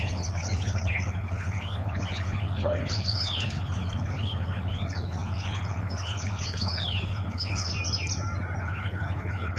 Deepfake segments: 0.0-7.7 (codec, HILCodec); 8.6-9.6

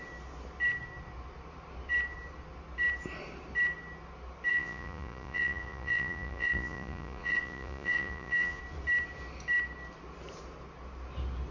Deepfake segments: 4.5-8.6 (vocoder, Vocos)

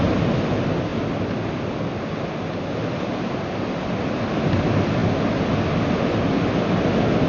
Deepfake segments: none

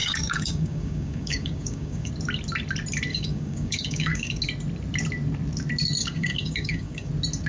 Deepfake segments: 0.0-2.1 (codec, DAC); 3.1-4.4; 6.0-7.1

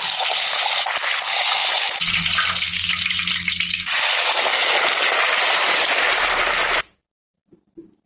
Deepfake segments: 4.5-8.1 (vocoder, BigVGAN v2)

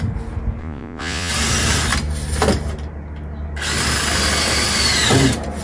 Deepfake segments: 0.6-1.3 (vocoder, Vocos)

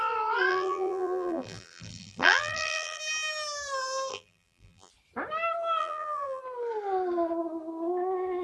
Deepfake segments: 0.5-3.0 (vocoder, BigVGAN v2); 4.1-4.9; 5.8-6.4